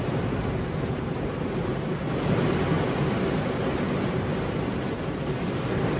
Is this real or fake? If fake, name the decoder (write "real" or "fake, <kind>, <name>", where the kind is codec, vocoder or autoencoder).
real